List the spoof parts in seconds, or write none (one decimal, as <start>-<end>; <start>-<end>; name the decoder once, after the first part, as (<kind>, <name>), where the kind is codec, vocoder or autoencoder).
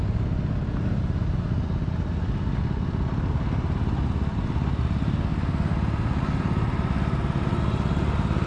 none